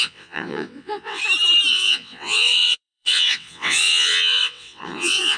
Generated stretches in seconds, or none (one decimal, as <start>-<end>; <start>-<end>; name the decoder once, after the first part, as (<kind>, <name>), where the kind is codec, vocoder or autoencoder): 0.0-1.2 (vocoder, WaveNeXt); 1.7-5.4